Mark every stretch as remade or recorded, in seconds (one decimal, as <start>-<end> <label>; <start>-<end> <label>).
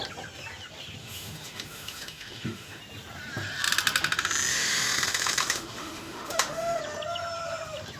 0.0-1.0 recorded; 1.0-2.8 remade; 2.8-4.5 recorded; 4.5-6.8 remade; 6.8-8.0 recorded